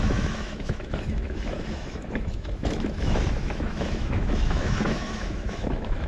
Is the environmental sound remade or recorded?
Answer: remade